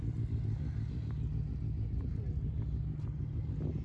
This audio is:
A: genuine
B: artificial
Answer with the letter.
A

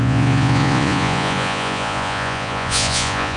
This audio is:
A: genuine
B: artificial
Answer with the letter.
B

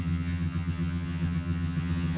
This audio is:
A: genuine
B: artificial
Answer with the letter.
B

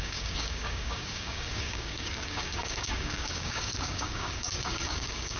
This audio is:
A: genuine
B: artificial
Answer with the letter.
B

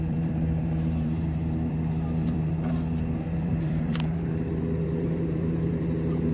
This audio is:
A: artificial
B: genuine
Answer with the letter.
A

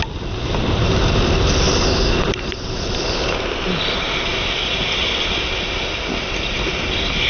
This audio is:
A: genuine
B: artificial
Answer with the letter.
A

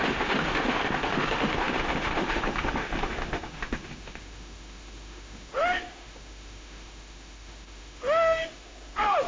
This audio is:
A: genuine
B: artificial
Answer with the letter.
B